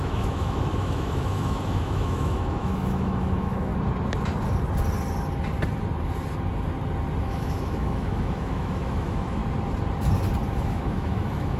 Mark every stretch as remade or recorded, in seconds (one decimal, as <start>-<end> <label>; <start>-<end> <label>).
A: 0.0-3.7 remade; 3.7-7.2 recorded; 7.2-9.4 remade; 9.4-10.5 recorded; 10.5-11.6 remade

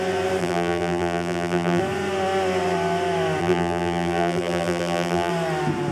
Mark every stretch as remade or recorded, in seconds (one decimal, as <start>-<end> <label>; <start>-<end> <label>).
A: 0.0-0.4 recorded; 0.4-1.8 remade; 1.8-3.4 recorded; 3.4-5.3 remade; 5.3-5.9 recorded

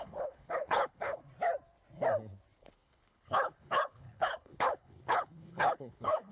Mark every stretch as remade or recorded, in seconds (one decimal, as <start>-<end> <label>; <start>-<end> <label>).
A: 0.0-1.2 remade; 1.2-2.6 recorded; 2.6-6.3 remade

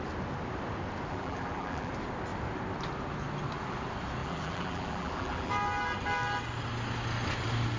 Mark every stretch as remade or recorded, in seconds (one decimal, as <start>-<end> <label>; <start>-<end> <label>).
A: 0.0-1.1 recorded; 1.1-1.9 remade; 1.9-4.2 recorded; 4.2-5.5 remade; 5.5-7.8 recorded

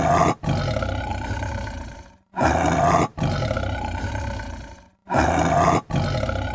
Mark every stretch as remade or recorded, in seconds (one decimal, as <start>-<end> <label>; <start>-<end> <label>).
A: 0.0-1.1 recorded; 1.1-2.3 remade; 2.3-3.1 recorded; 3.1-4.1 remade; 4.1-6.5 recorded

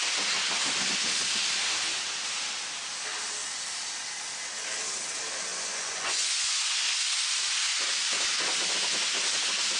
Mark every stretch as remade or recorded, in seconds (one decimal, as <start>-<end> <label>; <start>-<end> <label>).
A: 0.0-5.5 recorded; 5.5-6.7 remade; 6.7-9.8 recorded

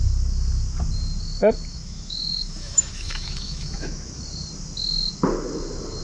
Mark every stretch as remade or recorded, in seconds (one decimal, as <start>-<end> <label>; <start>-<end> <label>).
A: 0.0-1.7 recorded; 1.7-4.2 remade; 4.2-6.0 recorded

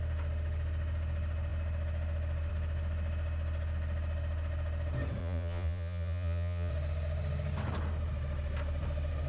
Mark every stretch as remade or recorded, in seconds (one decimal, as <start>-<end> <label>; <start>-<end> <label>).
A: 0.0-5.2 recorded; 5.2-6.7 remade; 6.7-9.3 recorded